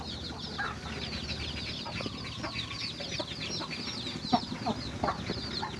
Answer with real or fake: real